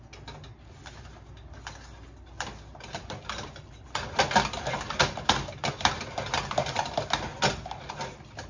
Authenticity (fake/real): real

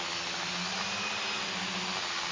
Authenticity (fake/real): real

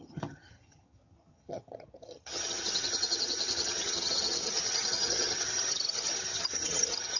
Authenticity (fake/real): fake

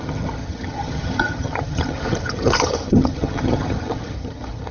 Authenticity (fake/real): fake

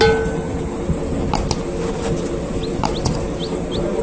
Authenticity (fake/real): real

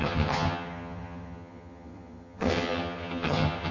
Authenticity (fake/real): fake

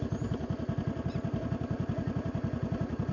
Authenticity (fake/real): real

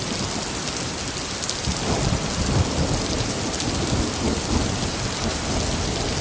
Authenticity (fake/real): real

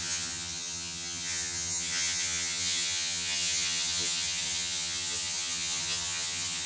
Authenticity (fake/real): fake